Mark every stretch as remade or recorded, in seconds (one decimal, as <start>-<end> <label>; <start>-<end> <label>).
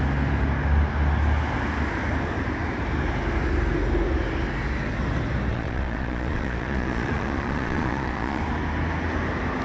0.0-5.5 recorded; 5.5-8.4 remade; 8.4-9.6 recorded